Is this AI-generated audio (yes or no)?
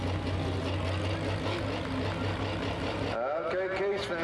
no